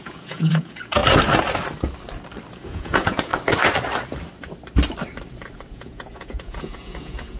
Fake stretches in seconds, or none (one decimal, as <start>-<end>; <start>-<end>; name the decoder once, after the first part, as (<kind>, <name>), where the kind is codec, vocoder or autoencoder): 0.0-1.0 (vocoder, Vocos); 2.5-3.3; 5.7-7.4